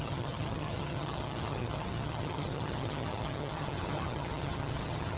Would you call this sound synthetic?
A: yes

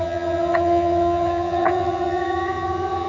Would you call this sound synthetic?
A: yes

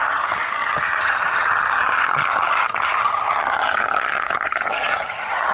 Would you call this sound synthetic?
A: yes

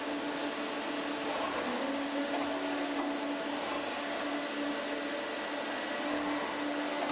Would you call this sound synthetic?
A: no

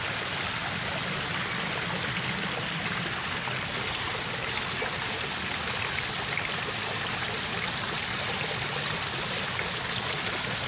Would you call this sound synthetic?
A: no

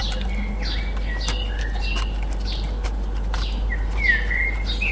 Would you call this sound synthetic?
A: no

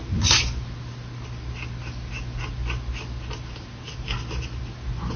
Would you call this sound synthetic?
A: no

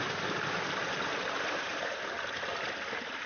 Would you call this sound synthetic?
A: no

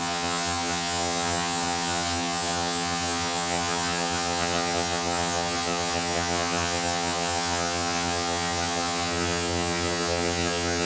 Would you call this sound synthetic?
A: yes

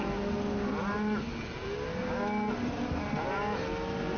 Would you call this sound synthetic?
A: no